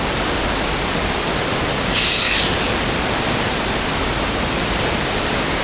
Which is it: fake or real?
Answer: fake